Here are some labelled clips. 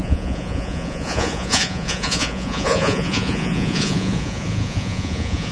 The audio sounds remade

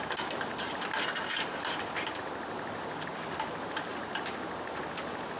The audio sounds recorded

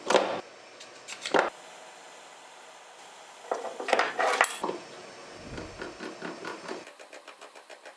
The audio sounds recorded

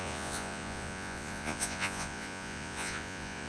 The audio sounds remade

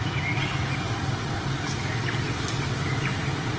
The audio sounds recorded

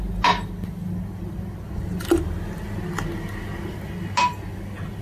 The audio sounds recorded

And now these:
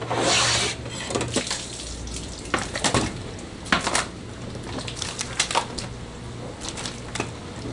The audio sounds recorded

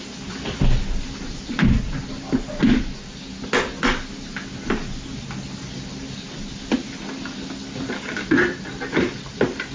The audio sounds recorded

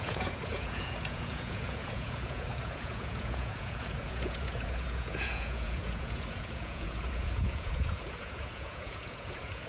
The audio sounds remade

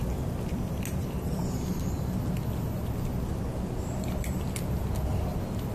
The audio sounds recorded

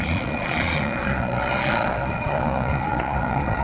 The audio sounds remade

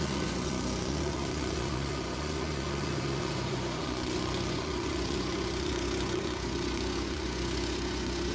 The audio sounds remade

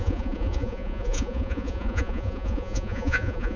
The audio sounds remade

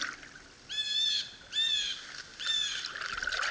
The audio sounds recorded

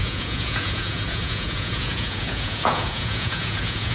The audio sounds remade